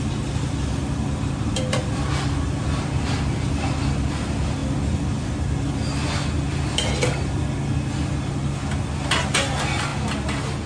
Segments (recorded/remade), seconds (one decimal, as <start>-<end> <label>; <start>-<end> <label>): 0.0-10.7 recorded